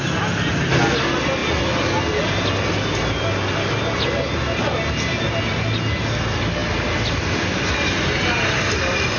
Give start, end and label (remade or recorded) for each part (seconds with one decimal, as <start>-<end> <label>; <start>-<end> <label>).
0.0-9.2 recorded